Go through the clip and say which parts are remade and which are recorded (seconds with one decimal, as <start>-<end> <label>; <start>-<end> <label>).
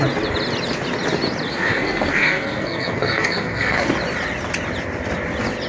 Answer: 0.0-1.5 recorded; 1.5-3.9 remade; 3.9-5.7 recorded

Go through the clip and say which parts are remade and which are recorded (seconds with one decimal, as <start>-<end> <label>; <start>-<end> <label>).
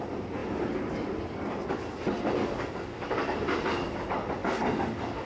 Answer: 0.0-2.4 recorded; 2.4-3.4 remade; 3.4-4.4 recorded; 4.4-5.3 remade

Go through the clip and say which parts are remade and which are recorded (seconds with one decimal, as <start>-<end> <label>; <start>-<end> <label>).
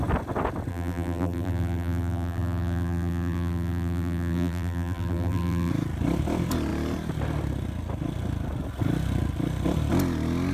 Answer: 0.0-0.7 recorded; 0.7-5.7 remade; 5.7-10.5 recorded